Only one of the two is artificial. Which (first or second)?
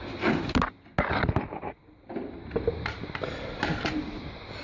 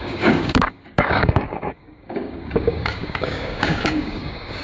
second